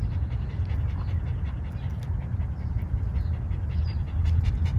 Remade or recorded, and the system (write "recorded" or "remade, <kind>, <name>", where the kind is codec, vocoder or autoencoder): recorded